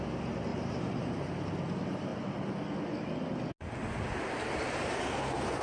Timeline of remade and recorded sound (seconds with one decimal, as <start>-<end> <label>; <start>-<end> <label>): 0.0-0.5 recorded; 0.5-1.4 remade; 1.4-5.6 recorded